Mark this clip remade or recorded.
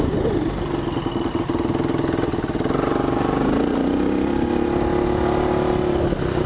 recorded